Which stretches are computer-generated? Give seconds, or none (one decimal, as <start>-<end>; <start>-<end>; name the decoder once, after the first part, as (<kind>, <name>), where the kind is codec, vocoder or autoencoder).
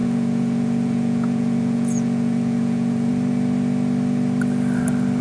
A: 0.0-3.1 (vocoder, Vocos)